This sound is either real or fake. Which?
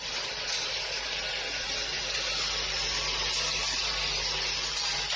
real